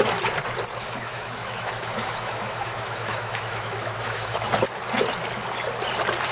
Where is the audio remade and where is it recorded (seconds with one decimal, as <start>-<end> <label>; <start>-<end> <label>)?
0.0-0.7 recorded; 0.7-4.5 remade; 4.5-6.3 recorded